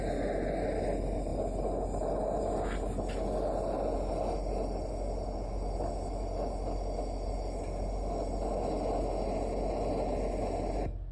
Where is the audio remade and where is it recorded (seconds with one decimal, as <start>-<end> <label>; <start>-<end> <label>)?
0.0-11.1 recorded